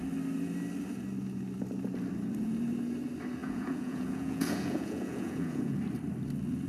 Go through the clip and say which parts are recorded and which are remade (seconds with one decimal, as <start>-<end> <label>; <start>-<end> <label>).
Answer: 0.0-3.4 recorded; 3.4-5.8 remade; 5.8-6.7 recorded